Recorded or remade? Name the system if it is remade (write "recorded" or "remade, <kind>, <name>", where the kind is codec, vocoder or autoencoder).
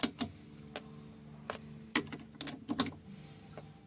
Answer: recorded